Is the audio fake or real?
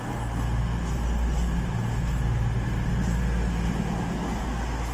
real